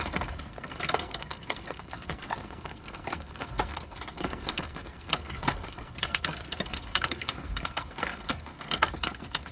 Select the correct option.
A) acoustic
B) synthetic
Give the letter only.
B